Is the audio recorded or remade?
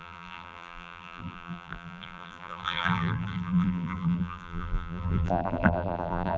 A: remade